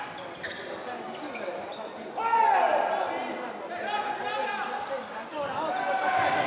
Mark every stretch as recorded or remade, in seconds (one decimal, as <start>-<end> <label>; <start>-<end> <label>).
0.0-6.5 recorded